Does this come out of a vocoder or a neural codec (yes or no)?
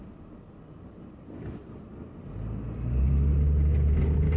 no